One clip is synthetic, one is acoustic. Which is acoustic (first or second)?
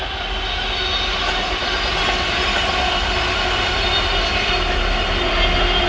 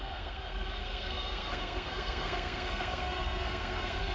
first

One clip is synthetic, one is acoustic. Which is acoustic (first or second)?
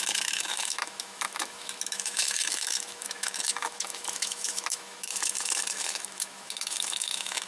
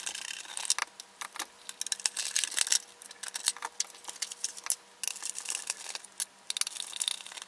second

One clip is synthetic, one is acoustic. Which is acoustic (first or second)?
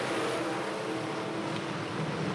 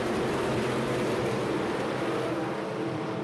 first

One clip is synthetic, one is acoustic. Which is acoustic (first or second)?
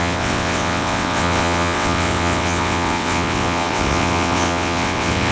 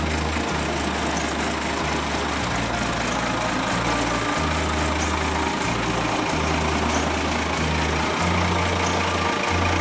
second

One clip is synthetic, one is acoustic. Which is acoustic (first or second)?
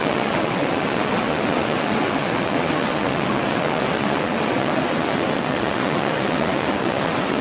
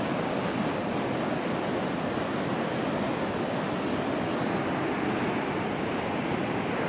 second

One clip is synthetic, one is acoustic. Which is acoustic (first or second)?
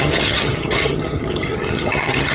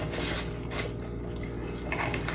second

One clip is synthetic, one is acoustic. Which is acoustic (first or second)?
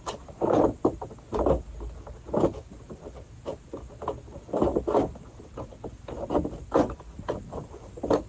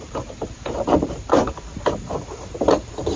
first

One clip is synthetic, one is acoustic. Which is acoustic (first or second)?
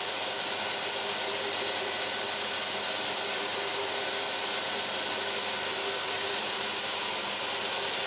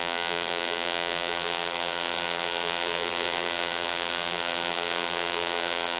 first